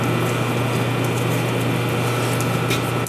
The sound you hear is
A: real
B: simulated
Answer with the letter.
A